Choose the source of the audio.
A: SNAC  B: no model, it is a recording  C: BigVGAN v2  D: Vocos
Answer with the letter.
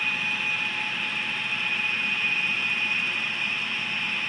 B